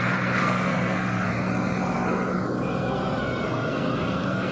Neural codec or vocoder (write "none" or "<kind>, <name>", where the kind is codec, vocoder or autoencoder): codec, SNAC